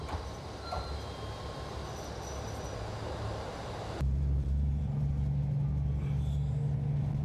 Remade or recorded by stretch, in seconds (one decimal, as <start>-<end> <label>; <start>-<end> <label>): 0.0-1.7 remade; 1.7-2.9 recorded; 2.9-5.1 remade; 5.1-7.2 recorded